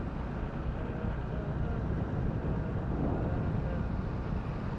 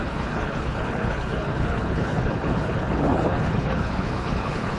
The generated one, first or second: second